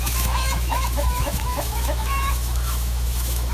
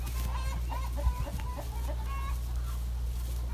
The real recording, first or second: second